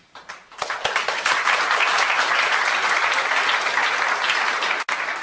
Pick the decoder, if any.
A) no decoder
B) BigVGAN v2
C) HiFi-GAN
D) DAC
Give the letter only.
A